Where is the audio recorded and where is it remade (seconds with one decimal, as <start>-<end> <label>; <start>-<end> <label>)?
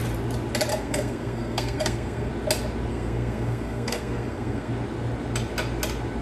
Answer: 0.0-0.7 recorded; 0.7-2.3 remade; 2.3-2.9 recorded; 2.9-4.7 remade; 4.7-6.2 recorded